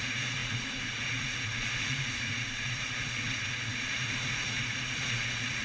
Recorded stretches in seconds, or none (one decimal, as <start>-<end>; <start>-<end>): none